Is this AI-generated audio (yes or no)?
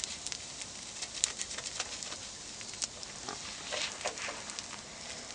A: no